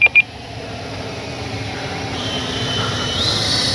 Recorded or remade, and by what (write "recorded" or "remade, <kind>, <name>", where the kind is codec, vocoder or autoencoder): remade, vocoder, BigVGAN v2